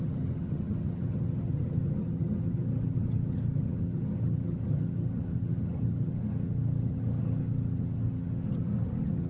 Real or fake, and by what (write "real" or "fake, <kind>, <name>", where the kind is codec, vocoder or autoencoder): fake, vocoder, HiFi-GAN